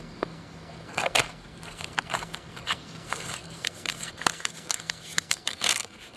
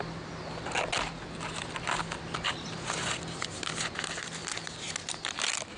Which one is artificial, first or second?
first